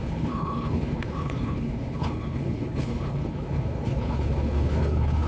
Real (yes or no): no